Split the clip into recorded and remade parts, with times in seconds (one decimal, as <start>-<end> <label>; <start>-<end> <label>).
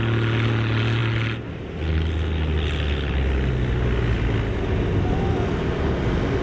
0.0-6.4 recorded